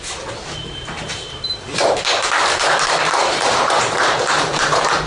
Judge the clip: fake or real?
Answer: fake